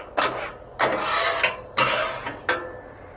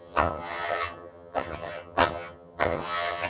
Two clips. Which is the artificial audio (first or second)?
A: second